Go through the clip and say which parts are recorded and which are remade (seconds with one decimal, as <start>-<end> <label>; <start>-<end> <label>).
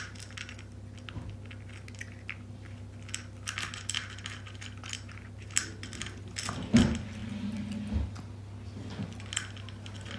0.0-10.2 recorded